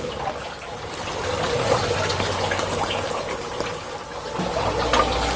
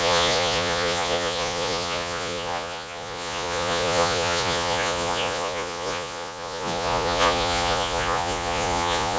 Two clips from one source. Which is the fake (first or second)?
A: second